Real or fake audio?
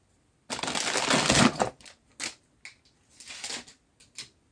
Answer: real